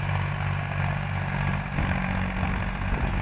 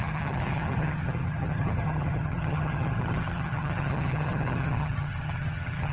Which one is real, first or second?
first